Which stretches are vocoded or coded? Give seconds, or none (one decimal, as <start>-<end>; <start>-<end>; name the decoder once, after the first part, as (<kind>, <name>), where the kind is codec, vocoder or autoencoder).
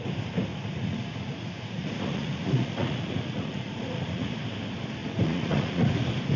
0.5-4.3 (vocoder, Vocos); 5.0-5.9